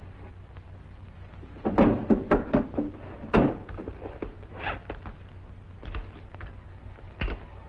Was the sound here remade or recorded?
recorded